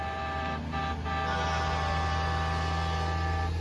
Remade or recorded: recorded